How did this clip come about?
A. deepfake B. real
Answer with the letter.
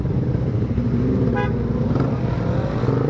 B